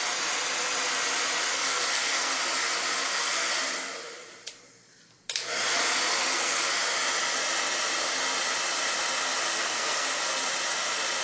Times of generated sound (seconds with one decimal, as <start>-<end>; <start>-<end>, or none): 1.5-2.4; 3.0-3.5; 6.2-6.7; 9.6-10.2

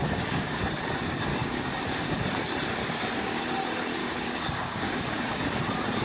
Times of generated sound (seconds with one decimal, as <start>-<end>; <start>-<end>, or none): 0.0-0.6; 1.3-2.2; 2.8-3.4; 4.0-5.6

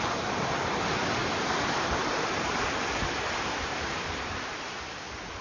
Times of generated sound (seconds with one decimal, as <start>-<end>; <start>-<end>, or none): 1.2-2.6; 3.7-4.6

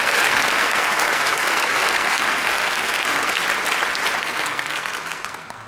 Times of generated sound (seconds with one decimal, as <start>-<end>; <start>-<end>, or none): 0.0-3.4; 4.2-5.7